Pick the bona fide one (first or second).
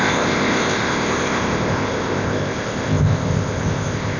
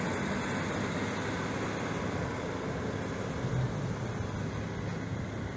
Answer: second